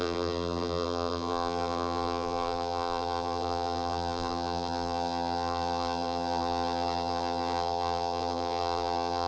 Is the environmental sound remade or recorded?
remade